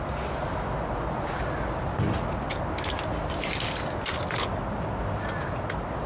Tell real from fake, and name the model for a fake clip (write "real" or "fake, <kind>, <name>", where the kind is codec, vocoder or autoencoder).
real